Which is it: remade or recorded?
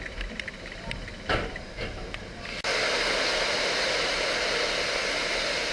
recorded